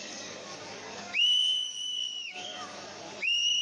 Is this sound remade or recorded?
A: remade